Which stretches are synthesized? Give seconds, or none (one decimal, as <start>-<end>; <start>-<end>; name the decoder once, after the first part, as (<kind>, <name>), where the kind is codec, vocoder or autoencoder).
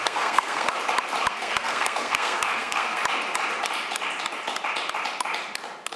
0.0-0.7 (codec, SNAC); 1.3-3.0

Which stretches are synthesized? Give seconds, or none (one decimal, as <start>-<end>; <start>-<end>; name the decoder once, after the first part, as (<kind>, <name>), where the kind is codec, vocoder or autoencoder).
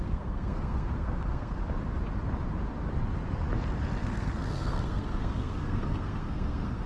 0.0-1.6 (codec, SNAC); 4.0-6.9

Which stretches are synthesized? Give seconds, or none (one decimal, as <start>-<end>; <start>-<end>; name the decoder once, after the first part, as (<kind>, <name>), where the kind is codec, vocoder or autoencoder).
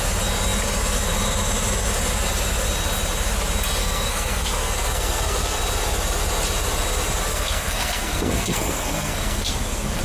3.8-5.6 (codec, SNAC); 7.3-10.0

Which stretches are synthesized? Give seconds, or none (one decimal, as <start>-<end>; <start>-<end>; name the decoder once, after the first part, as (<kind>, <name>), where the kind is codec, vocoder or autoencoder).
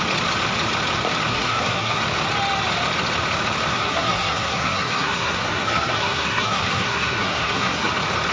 1.3-2.0 (codec, SNAC); 3.7-7.9